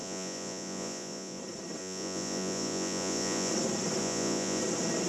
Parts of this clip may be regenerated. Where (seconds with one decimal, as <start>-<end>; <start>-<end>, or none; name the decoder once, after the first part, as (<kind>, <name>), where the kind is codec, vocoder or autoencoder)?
0.0-1.4 (vocoder, Vocos); 1.8-3.5; 4.0-4.6